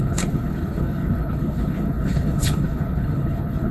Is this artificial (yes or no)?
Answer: yes